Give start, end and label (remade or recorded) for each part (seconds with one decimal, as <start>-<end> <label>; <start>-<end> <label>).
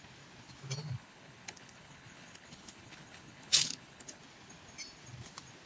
0.0-0.8 recorded; 0.8-4.2 remade; 4.2-5.7 recorded